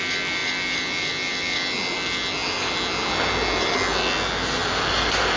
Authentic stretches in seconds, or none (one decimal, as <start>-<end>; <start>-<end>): 0.0-5.4